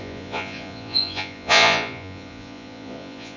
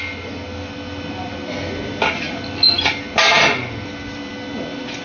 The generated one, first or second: first